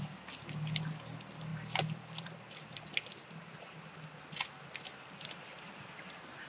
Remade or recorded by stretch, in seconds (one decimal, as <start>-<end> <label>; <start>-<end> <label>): 0.0-1.5 recorded; 1.5-2.8 remade; 2.8-6.5 recorded